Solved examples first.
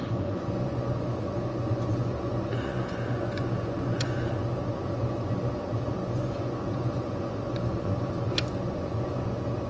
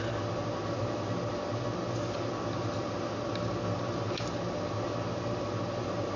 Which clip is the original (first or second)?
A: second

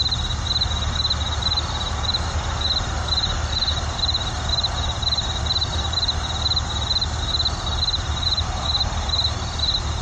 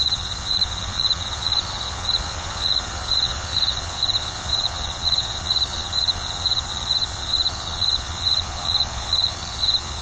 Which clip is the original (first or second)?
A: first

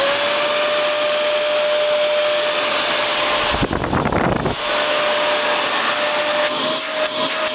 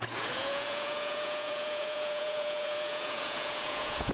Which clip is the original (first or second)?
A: first